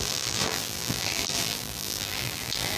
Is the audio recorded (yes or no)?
no